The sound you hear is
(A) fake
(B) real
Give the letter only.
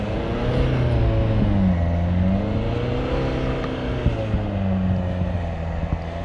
B